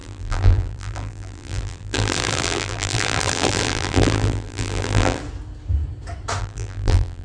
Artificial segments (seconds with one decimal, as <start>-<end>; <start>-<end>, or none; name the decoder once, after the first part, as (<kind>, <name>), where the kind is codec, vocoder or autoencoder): 0.0-5.2 (vocoder, BigVGAN v2); 6.4-7.2